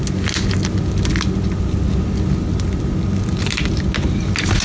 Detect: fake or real real